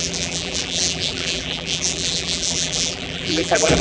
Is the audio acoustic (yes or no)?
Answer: no